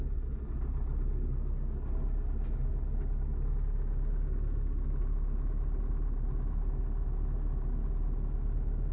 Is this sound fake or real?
real